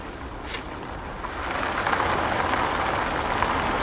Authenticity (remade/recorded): recorded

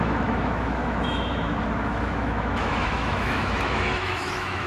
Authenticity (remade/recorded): remade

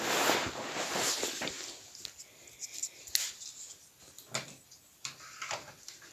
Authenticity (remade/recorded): recorded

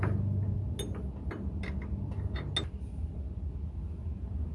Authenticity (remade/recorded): recorded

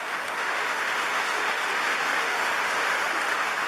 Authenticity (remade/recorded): remade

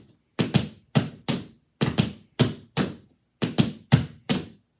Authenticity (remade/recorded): recorded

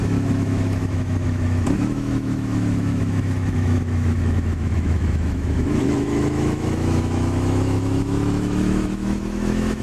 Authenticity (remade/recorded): remade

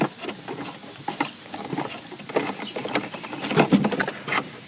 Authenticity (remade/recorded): recorded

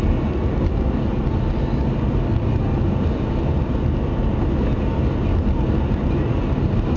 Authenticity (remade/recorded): recorded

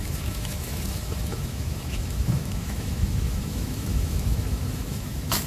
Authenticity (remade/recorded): remade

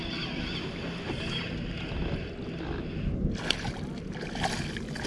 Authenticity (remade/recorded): recorded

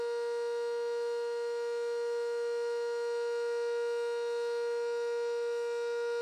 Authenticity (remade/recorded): recorded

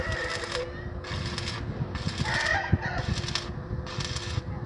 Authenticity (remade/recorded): recorded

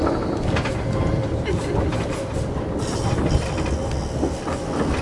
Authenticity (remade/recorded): recorded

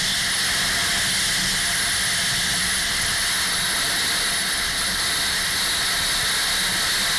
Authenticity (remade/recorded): recorded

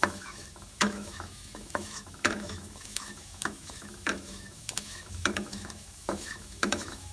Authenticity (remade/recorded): remade